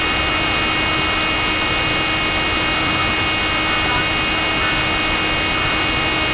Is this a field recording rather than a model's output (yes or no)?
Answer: yes